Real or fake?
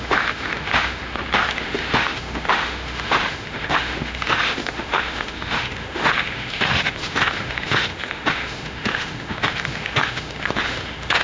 fake